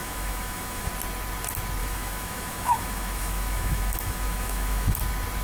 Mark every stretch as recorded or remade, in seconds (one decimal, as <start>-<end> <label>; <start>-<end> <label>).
0.0-0.9 remade; 0.9-1.8 recorded; 1.8-5.0 remade; 5.0-5.4 recorded